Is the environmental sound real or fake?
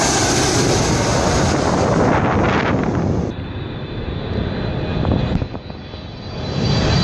real